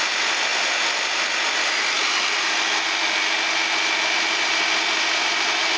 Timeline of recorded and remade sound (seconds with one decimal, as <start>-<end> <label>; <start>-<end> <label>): 0.0-5.8 recorded